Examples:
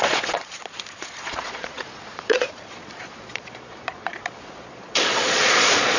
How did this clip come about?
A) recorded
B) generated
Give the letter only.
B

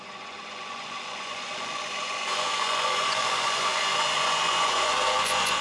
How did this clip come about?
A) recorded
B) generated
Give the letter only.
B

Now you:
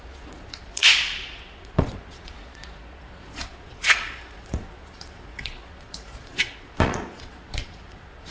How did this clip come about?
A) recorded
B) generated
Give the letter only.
B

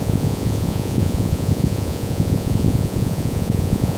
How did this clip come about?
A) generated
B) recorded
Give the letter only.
A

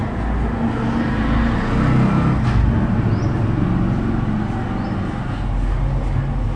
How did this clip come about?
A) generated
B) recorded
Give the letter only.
B